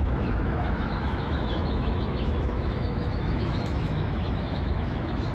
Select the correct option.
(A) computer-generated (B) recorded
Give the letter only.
A